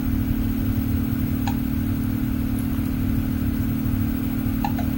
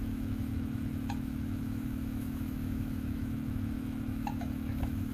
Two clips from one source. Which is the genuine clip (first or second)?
first